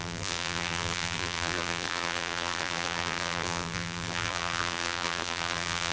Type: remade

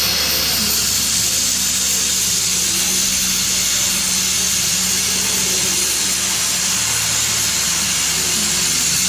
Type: recorded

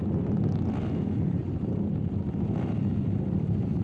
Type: recorded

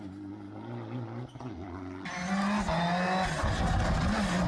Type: recorded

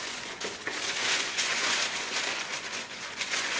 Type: remade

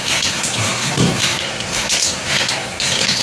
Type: remade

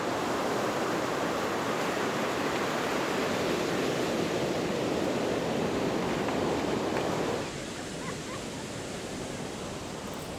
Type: recorded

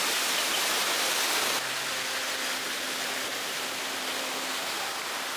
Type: recorded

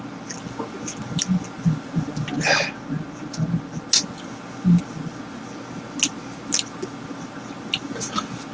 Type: recorded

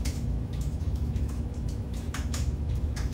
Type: remade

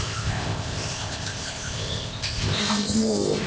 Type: remade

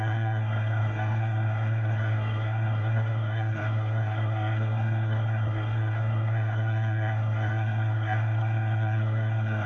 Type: remade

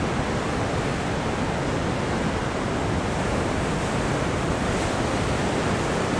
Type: recorded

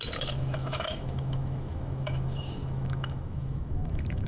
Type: remade